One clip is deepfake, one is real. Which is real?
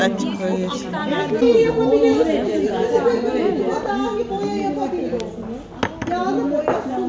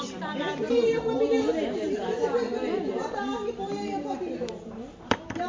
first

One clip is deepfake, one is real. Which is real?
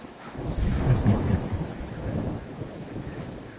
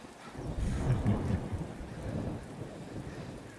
second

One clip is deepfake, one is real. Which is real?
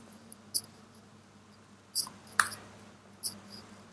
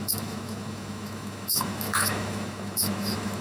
first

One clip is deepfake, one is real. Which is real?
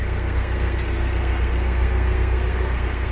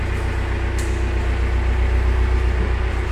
second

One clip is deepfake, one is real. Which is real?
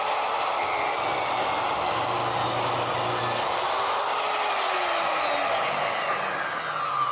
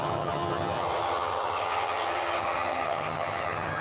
first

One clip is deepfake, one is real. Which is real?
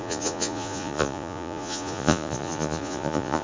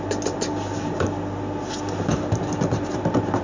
second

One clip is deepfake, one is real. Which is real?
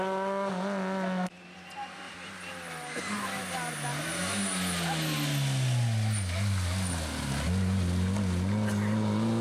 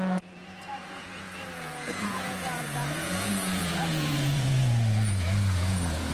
first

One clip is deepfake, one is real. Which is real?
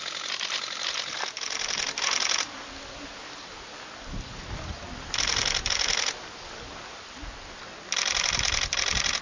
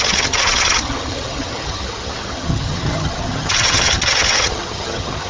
first